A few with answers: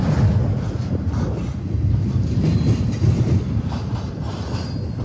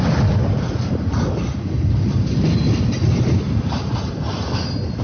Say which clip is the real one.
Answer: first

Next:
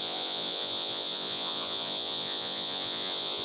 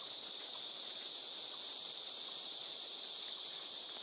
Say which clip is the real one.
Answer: second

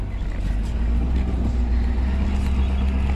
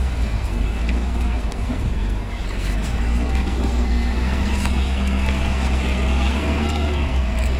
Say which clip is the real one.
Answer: first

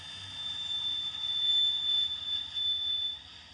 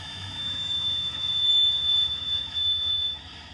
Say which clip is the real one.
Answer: first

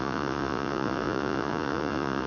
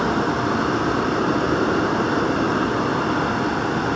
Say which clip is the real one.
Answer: second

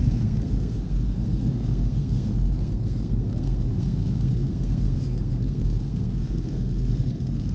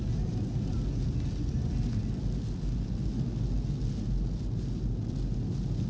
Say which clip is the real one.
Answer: second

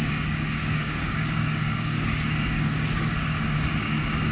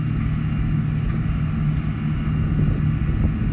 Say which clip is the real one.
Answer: second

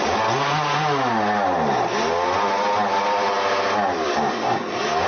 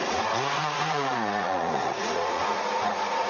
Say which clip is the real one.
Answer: first